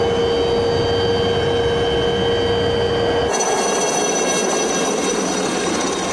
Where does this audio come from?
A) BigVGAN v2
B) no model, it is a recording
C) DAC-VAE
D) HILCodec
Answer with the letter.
B